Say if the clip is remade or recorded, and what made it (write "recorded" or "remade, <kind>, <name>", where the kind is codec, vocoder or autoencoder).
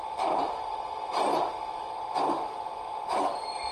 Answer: recorded